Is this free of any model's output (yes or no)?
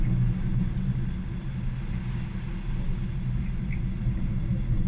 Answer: yes